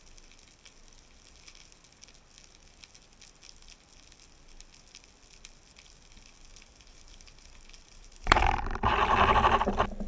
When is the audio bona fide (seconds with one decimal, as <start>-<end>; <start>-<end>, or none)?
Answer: 0.0-6.5; 8.9-10.1